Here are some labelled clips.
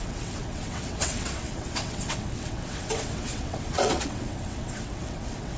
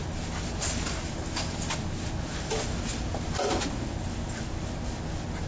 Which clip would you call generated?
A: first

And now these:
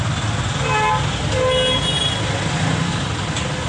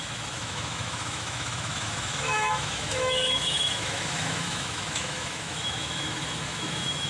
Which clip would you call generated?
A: second